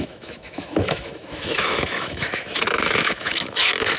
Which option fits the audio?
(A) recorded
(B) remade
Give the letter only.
B